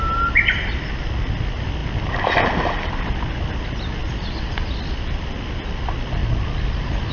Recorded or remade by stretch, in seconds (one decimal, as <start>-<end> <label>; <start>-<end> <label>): 0.0-6.2 recorded; 6.2-7.1 remade